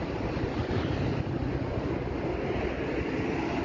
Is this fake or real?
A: real